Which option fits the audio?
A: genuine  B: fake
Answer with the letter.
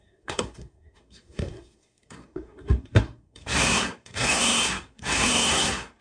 B